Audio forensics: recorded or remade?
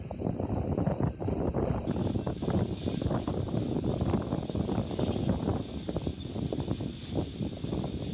recorded